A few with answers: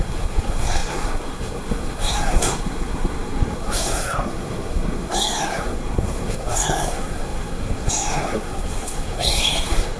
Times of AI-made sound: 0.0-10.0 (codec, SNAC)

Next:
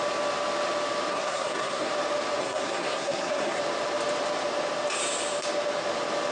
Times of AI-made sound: 1.1-1.9 (codec, SNAC); 2.4-3.6

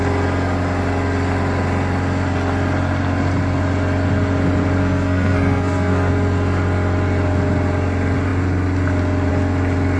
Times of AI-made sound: 4.8-6.1 (codec, SNAC)

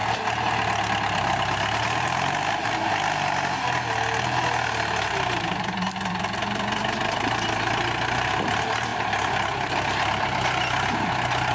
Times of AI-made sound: none